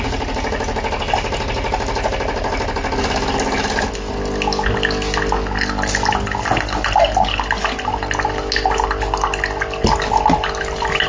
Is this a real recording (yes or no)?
yes